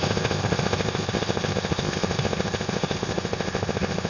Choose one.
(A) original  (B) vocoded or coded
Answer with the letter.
B